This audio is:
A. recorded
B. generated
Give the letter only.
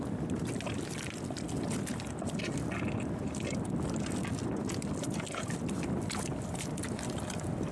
A